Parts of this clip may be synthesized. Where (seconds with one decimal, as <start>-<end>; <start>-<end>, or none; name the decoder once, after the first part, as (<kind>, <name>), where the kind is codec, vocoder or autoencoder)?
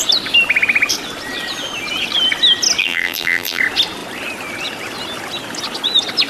2.8-3.6 (vocoder, BigVGAN v2)